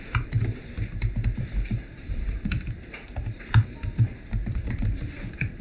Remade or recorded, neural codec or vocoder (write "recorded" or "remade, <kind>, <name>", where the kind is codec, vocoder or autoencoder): remade, vocoder, BigVGAN v2